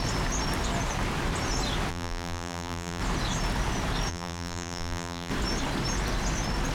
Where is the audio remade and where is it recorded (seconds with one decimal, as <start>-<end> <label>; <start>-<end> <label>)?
0.0-1.9 recorded; 1.9-3.0 remade; 3.0-4.1 recorded; 4.1-5.3 remade; 5.3-6.7 recorded